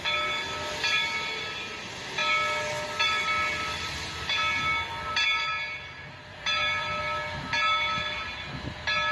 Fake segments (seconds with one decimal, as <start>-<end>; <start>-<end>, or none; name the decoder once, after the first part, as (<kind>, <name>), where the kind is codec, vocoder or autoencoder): 6.5-7.0 (vocoder, BigVGAN v2)